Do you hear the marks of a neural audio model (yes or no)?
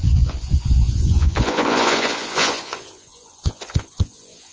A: yes